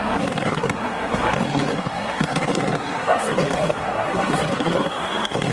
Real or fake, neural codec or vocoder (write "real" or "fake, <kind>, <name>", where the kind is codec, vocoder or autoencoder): fake, codec, SNAC